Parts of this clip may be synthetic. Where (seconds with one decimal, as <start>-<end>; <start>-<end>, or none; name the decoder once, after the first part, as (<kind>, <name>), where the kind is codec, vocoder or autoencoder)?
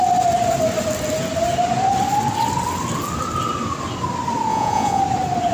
4.5-5.0 (vocoder, Vocos)